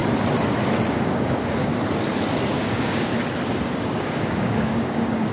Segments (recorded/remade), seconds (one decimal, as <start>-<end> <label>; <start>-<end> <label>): 0.0-0.9 recorded; 0.9-1.7 remade; 1.7-2.5 recorded; 2.5-3.1 remade; 3.1-3.8 recorded; 3.8-5.3 remade